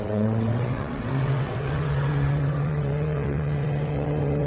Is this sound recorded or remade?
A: remade